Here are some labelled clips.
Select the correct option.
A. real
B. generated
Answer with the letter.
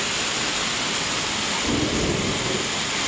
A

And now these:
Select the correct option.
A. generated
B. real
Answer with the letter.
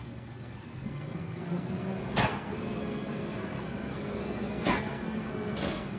A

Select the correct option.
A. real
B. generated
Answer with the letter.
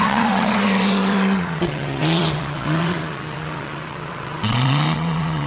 B